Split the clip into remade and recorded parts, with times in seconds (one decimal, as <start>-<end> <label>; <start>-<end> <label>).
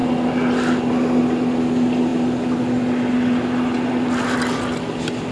0.0-5.3 recorded